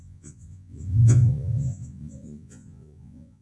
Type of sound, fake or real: fake